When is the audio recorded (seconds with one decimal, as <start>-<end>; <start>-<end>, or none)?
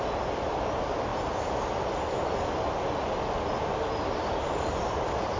0.0-5.4